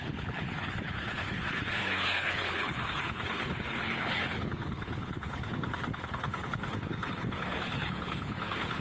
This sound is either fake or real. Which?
fake